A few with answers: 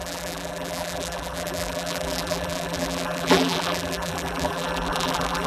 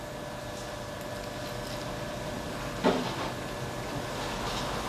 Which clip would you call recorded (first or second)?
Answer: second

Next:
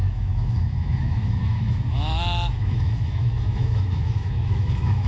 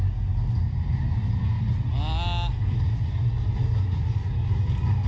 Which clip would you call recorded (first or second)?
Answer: second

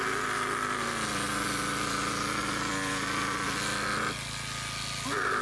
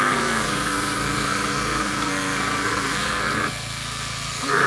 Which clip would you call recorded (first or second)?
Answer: first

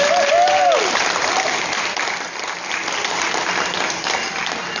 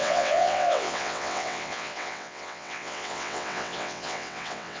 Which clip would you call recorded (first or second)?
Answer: first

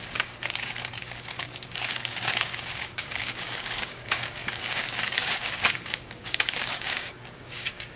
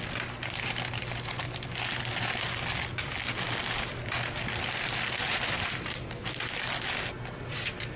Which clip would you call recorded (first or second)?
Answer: second